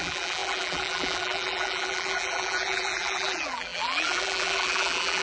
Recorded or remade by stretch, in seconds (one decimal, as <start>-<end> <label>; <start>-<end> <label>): 0.0-5.2 remade